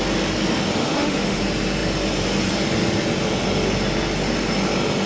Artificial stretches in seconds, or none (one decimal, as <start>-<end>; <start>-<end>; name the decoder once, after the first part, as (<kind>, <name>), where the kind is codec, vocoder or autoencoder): 0.8-1.4 (autoencoder, DAC-VAE)